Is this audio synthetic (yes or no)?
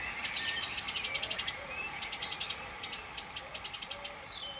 no